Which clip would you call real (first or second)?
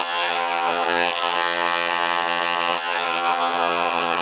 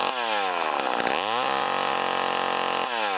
second